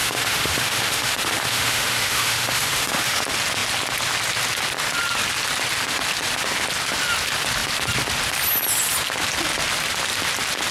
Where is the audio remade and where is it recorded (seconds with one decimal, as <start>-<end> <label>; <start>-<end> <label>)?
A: 0.0-3.2 remade; 3.2-10.7 recorded